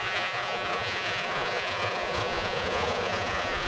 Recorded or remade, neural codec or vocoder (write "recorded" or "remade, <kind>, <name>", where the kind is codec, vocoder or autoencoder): remade, vocoder, Vocos